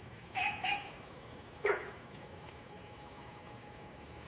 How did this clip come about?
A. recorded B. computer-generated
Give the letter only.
B